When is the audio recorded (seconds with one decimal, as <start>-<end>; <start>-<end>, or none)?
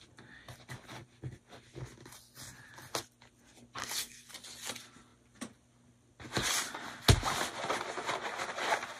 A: 0.0-3.8; 4.3-9.0